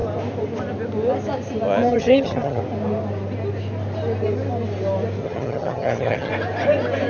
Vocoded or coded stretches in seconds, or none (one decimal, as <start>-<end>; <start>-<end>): 1.9-2.6; 5.2-6.3